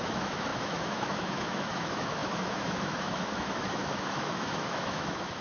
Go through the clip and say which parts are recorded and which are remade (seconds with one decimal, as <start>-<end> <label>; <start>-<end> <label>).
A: 0.0-5.4 remade